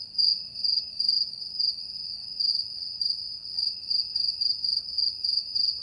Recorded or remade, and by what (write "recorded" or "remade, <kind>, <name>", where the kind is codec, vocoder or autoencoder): recorded